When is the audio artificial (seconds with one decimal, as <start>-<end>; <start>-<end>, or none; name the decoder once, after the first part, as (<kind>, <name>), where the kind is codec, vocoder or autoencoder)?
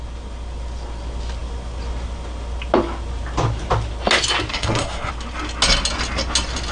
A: 4.5-5.1 (codec, SNAC)